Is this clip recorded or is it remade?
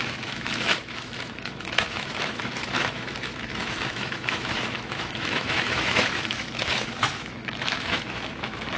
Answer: remade